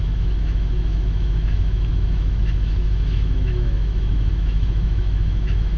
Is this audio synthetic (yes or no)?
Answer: yes